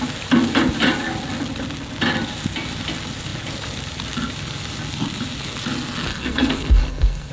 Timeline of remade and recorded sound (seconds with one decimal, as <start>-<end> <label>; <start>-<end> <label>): 0.0-6.1 recorded; 6.1-7.3 remade